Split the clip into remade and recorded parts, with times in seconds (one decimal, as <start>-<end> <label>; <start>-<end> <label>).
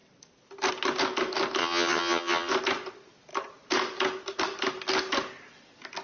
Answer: 0.0-1.6 recorded; 1.6-2.5 remade; 2.5-6.0 recorded